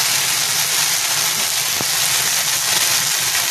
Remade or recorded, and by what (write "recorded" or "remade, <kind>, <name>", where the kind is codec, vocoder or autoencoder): recorded